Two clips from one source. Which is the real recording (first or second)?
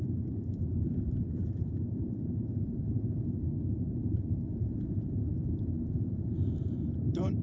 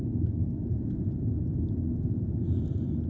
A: second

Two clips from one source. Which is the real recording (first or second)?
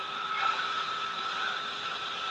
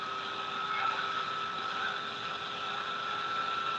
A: second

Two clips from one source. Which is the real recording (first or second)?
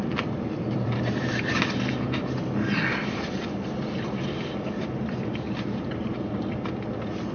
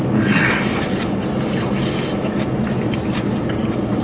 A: second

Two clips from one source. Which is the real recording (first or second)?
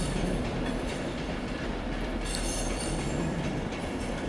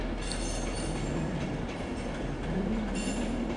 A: second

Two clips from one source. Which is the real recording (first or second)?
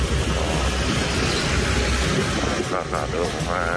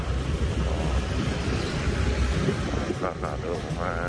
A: first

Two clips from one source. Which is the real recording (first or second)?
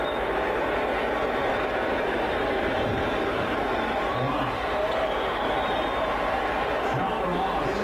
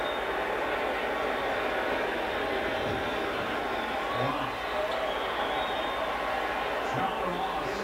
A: second